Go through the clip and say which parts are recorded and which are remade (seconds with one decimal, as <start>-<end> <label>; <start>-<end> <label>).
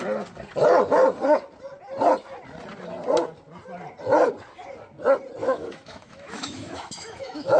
0.0-5.4 recorded; 5.4-7.6 remade